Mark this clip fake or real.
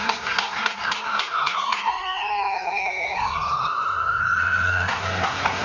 fake